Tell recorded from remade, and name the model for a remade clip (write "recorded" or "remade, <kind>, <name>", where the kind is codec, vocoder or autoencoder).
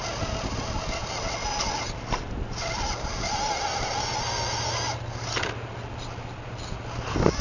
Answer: recorded